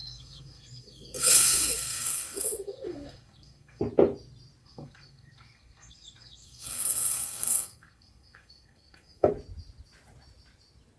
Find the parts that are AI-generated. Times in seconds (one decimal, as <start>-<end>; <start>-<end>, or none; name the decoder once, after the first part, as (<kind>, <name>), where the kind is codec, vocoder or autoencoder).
0.0-3.8 (codec, SNAC); 4.6-9.3